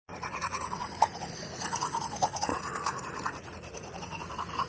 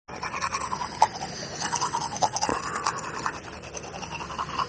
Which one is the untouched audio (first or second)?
second